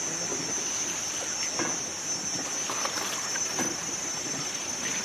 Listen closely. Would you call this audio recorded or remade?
recorded